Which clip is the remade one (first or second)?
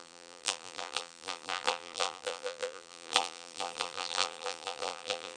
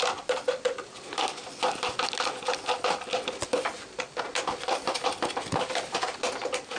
first